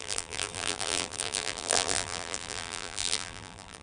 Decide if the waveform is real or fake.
fake